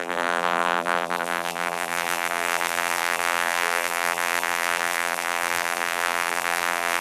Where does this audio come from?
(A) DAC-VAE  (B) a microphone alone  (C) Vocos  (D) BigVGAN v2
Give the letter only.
D